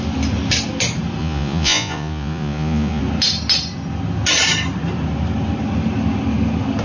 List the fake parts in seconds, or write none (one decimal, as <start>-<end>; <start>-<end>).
1.2-3.0